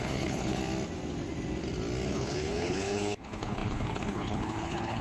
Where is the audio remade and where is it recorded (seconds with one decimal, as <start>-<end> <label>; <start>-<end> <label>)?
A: 0.0-0.6 remade; 0.6-2.1 recorded; 2.1-5.0 remade